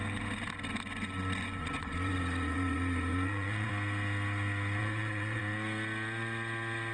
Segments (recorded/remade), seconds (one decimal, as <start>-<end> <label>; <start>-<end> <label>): 0.0-1.6 recorded; 1.6-3.7 remade; 3.7-4.8 recorded; 4.8-5.4 remade; 5.4-6.9 recorded